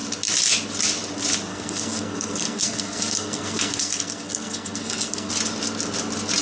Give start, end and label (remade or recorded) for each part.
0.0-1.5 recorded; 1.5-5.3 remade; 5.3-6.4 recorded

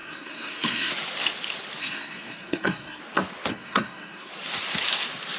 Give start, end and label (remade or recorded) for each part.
0.0-0.9 remade; 0.9-1.8 recorded; 1.8-3.0 remade; 3.0-3.5 recorded; 3.5-4.3 remade; 4.3-5.4 recorded

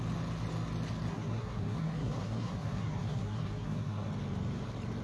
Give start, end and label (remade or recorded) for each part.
0.0-1.1 recorded; 1.1-4.1 remade; 4.1-5.0 recorded

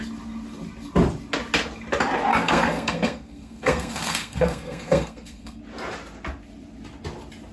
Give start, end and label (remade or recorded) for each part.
0.0-2.3 recorded; 2.3-5.6 remade; 5.6-7.5 recorded